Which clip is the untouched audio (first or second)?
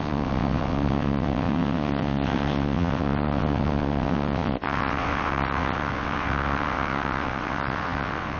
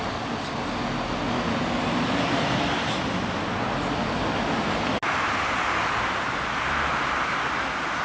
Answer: second